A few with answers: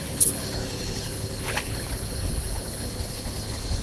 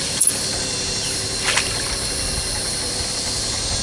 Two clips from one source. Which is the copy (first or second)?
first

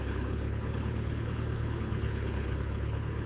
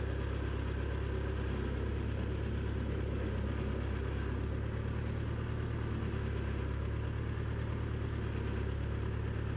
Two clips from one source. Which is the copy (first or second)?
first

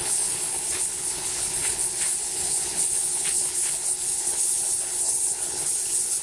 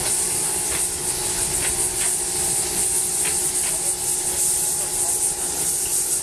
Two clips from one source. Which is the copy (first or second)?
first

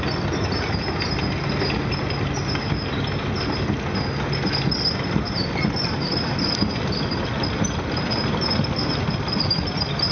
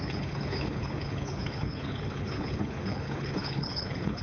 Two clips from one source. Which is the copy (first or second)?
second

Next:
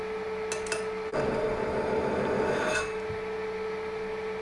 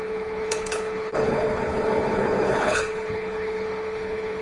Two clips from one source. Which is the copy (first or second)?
second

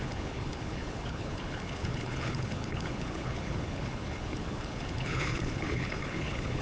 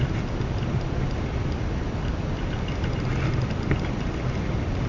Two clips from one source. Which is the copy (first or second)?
first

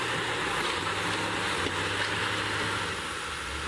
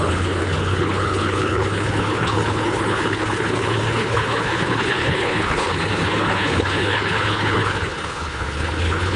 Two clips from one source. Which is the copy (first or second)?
second